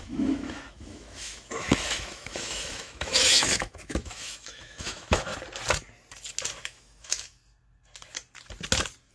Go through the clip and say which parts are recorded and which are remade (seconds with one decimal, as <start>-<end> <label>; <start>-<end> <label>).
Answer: 0.0-5.3 remade; 5.3-6.6 recorded; 6.6-7.4 remade; 7.4-9.1 recorded